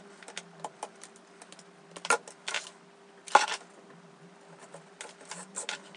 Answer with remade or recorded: recorded